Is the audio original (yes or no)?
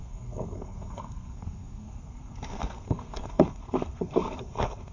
no